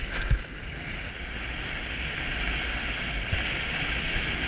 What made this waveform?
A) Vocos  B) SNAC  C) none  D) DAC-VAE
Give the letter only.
C